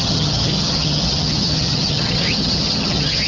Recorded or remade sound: remade